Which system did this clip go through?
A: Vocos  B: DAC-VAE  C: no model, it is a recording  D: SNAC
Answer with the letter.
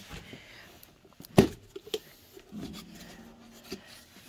C